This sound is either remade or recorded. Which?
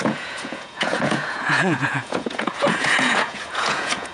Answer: remade